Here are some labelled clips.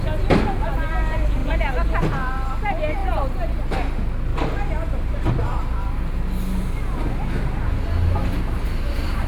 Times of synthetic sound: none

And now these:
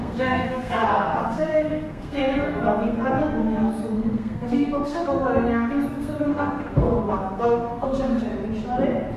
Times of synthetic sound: 0.0-8.3 (codec, SNAC)

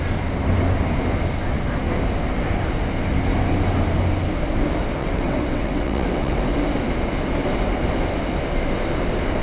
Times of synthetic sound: 5.0-6.4 (vocoder, WaveNeXt)

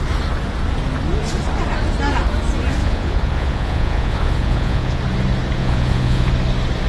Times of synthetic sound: 2.8-5.0 (vocoder, Vocos); 5.6-6.3